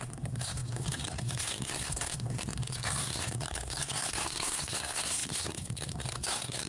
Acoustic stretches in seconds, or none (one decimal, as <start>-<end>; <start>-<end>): none